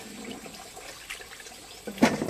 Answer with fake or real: real